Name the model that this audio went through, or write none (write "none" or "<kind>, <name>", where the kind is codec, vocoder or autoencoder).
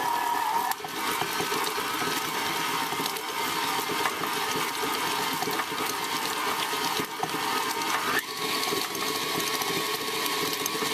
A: none